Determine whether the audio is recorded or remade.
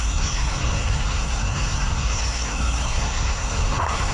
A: remade